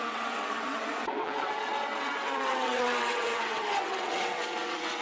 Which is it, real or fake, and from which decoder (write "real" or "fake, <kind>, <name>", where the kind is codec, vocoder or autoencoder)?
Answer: fake, vocoder, WaveNeXt